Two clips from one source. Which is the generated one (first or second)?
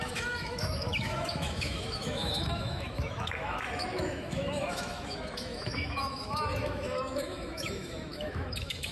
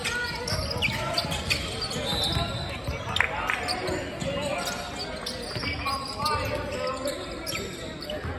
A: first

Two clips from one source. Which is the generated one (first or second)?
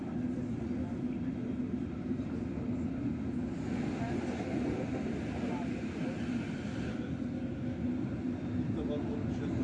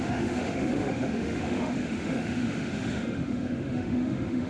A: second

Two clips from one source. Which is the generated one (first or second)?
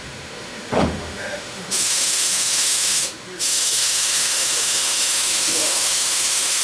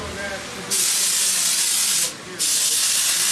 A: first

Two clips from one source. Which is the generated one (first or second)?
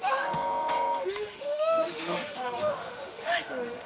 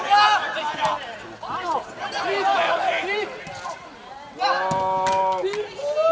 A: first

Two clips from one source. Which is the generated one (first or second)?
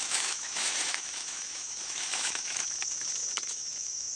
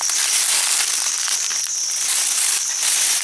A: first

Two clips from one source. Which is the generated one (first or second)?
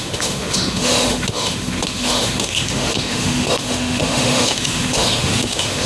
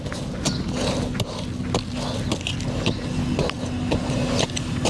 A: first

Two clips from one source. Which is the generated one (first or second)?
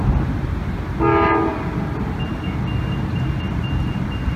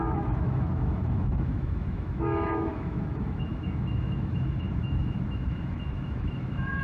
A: second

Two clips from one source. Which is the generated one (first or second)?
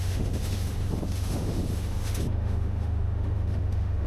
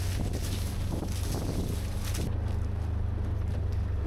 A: first